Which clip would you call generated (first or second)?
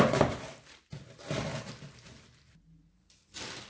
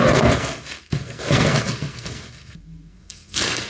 second